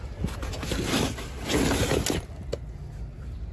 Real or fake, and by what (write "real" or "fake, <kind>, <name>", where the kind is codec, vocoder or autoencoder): real